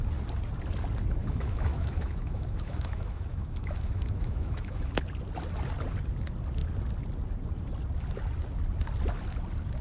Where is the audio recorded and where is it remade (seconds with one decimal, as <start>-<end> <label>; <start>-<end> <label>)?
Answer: 0.0-1.2 recorded; 1.2-4.9 remade; 4.9-9.8 recorded